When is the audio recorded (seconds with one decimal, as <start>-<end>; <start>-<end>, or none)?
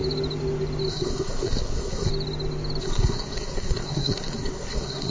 0.0-0.9; 2.1-2.8